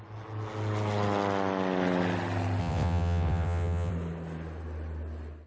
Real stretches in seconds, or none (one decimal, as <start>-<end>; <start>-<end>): 0.0-2.6; 3.9-5.5